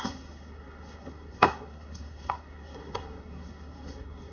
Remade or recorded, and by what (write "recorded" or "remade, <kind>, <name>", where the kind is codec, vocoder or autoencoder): remade, codec, SNAC